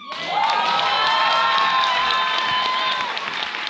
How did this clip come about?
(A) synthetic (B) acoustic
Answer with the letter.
B